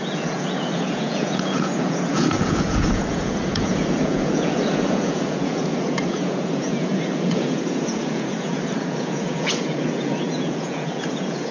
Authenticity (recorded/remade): remade